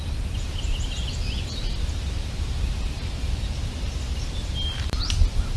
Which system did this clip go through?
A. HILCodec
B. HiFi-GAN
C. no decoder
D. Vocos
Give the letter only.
C